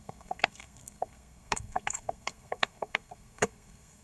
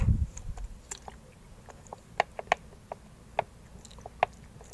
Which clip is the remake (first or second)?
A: first